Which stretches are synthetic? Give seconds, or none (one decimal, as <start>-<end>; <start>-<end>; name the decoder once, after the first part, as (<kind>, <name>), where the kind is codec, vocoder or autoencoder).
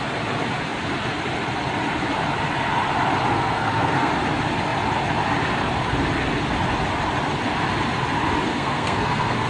3.3-4.1 (codec, SNAC); 8.5-9.5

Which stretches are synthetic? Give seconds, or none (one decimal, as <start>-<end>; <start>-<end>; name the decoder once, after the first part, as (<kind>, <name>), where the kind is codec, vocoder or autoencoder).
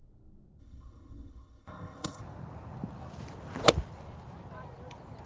0.6-2.2 (codec, ZipCodec)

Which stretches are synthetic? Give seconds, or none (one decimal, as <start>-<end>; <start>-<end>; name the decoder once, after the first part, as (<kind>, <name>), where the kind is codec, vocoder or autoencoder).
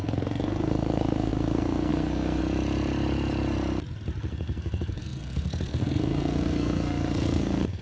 0.0-2.4 (codec, SNAC); 4.2-7.8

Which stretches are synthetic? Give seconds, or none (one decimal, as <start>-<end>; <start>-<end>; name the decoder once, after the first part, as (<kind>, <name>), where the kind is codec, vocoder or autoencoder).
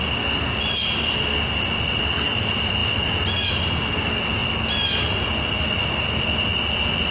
none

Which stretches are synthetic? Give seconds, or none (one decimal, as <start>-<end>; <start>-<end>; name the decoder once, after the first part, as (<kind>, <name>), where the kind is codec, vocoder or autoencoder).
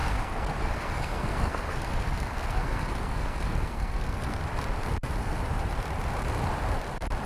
0.0-4.4 (codec, SNAC)